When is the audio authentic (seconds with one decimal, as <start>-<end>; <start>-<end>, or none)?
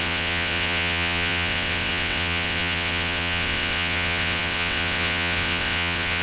none